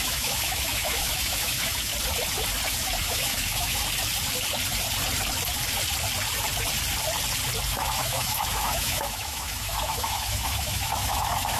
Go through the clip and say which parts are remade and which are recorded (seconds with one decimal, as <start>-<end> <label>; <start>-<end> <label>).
0.0-1.9 remade; 1.9-3.0 recorded; 3.0-3.8 remade; 3.8-7.7 recorded; 7.7-11.6 remade